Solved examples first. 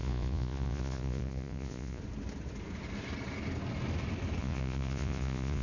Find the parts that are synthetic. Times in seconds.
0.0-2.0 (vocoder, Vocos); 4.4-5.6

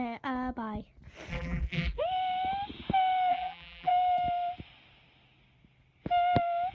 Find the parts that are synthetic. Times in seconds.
1.3-2.0 (vocoder, BigVGAN v2); 3.3-3.9